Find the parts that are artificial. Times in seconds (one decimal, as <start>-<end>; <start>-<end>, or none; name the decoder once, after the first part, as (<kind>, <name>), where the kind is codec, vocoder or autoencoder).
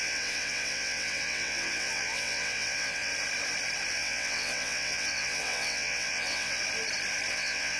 0.0-3.1 (vocoder, WaveNeXt); 3.9-6.6; 7.3-7.8